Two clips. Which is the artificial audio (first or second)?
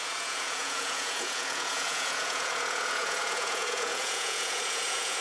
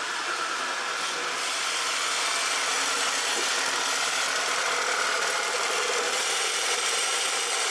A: first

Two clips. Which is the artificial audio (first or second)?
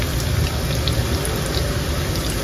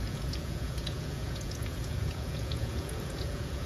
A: second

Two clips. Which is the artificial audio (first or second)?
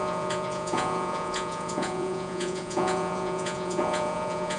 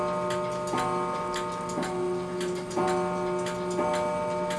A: first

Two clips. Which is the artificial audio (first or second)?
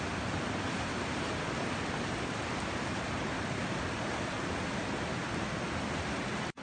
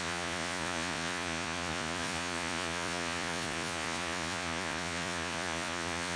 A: second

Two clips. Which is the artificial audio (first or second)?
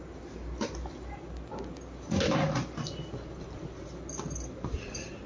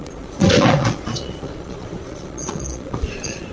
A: second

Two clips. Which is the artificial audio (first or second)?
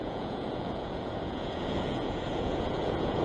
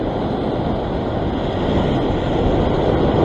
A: first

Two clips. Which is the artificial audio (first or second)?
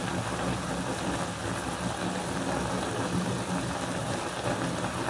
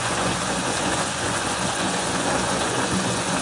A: second